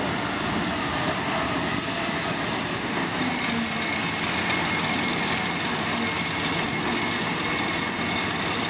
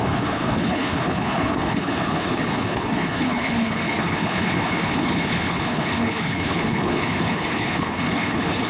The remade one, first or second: second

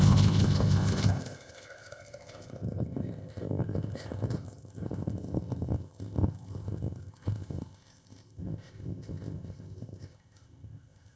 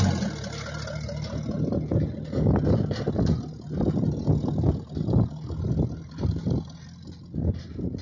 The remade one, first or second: first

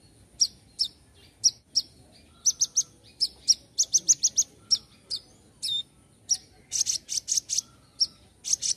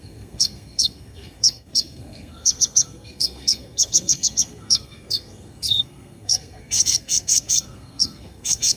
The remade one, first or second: second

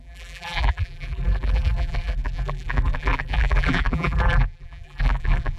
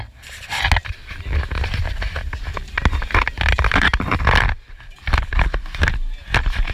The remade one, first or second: first